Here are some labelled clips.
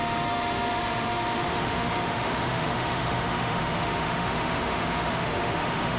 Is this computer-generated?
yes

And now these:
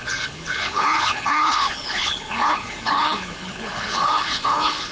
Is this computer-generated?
yes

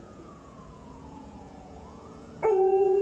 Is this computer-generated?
yes